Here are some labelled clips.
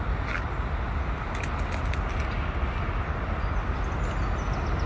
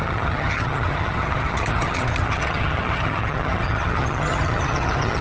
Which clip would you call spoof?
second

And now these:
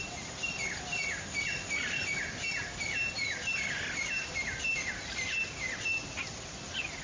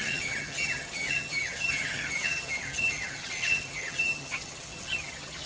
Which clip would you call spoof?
second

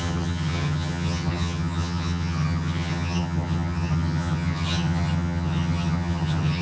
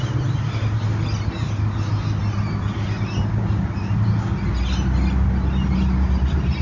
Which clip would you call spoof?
first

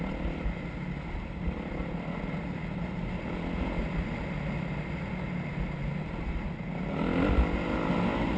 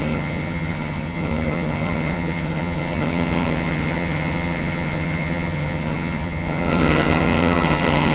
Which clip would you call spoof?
second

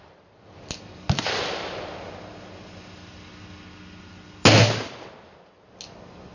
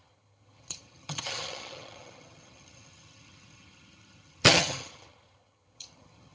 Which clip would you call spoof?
second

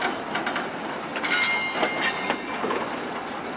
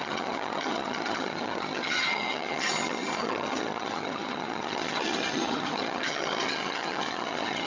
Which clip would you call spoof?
second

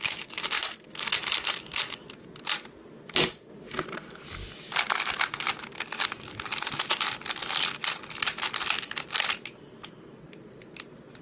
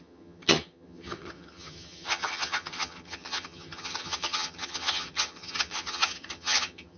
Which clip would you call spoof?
second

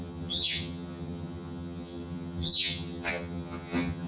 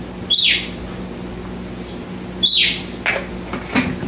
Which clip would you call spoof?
first